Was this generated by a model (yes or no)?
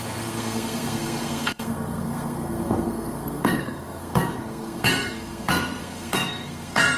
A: yes